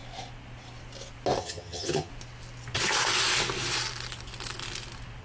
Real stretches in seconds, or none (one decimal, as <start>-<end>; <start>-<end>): 0.0-1.4; 2.1-5.2